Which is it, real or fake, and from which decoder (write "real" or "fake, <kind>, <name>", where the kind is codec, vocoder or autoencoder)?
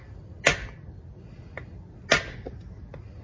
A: real